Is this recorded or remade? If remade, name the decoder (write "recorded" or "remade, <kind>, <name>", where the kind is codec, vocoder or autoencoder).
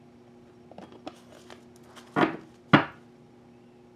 recorded